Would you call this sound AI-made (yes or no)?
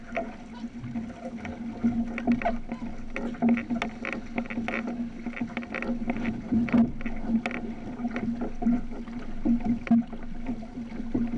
no